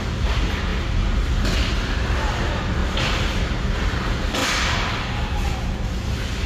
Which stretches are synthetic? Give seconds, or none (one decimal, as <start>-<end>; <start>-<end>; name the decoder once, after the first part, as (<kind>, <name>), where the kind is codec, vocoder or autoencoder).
none